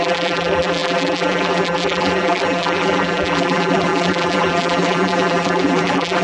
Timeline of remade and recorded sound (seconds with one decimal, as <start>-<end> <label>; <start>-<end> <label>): 0.0-6.2 remade